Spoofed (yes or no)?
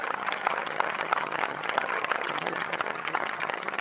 yes